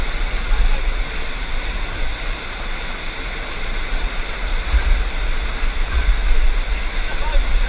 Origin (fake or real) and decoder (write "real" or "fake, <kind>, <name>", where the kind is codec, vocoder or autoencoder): real